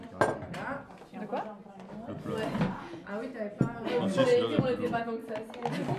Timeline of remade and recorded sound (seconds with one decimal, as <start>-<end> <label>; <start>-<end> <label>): 0.0-6.0 recorded